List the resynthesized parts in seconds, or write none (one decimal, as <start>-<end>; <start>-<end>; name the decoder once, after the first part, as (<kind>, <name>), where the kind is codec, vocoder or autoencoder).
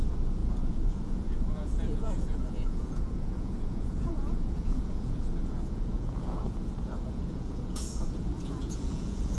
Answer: 0.0-9.4 (vocoder, Vocos)